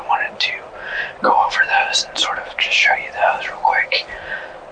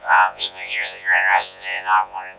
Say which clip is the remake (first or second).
second